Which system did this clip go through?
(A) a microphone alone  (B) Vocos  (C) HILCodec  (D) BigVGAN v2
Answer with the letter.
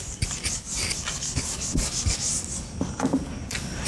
A